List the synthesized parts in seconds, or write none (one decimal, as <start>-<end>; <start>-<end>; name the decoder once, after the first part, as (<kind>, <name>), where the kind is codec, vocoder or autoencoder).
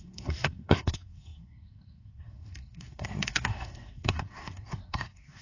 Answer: 0.0-5.4 (codec, SNAC)